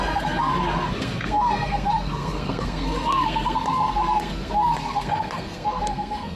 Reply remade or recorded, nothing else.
remade